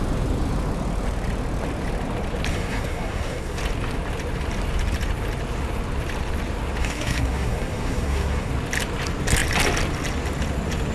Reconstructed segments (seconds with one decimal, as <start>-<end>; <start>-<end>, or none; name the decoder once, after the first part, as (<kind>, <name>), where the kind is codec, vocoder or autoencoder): 2.5-3.6 (codec, SNAC); 6.8-8.5